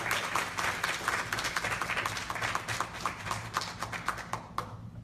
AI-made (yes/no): no